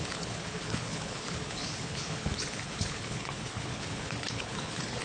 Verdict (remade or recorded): remade